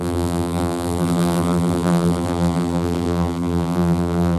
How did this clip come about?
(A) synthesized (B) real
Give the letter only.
A